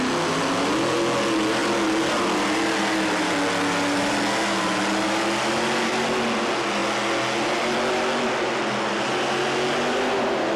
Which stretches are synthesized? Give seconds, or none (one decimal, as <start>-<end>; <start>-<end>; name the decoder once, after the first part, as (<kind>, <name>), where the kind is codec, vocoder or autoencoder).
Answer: none